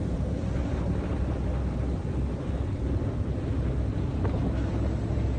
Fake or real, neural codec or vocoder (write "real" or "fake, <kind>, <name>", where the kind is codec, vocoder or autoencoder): real